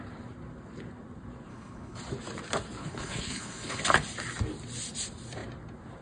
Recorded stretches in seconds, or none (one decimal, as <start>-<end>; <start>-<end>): 0.0-1.5; 2.0-2.8; 3.8-6.0